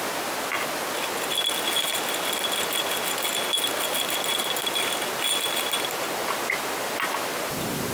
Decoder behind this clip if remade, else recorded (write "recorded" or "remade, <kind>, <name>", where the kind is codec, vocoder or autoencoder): recorded